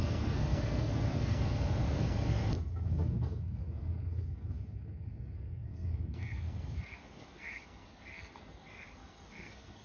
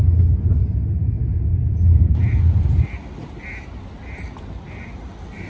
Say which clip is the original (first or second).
second